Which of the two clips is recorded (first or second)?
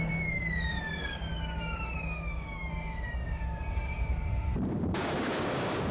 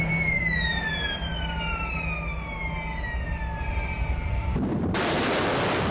second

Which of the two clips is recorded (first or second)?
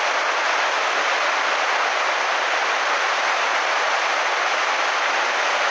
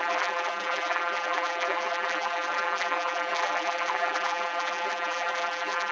first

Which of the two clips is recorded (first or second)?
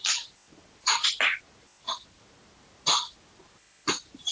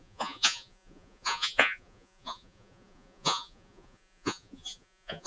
first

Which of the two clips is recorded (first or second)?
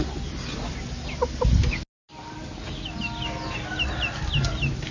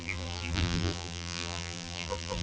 first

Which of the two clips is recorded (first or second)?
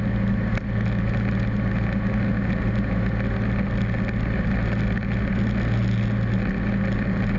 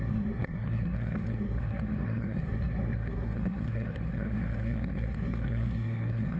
first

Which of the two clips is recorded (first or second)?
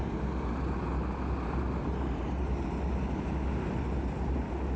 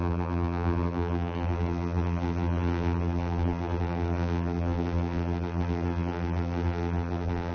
first